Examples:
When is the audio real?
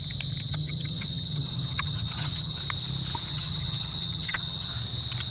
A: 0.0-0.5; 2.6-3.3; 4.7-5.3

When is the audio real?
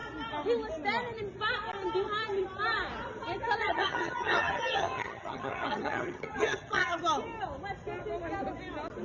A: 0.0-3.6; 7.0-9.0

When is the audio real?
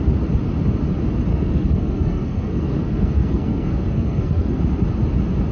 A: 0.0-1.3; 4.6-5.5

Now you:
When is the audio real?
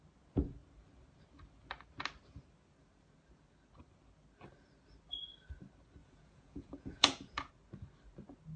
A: 0.0-6.0; 7.5-8.6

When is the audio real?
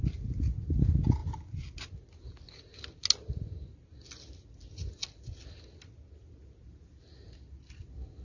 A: 0.0-8.2